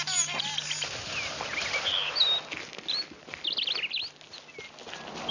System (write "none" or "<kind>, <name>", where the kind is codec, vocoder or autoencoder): none